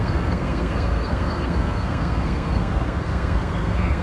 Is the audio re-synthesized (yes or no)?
yes